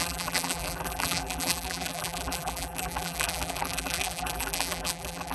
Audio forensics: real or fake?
fake